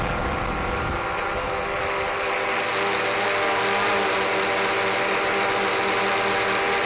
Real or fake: real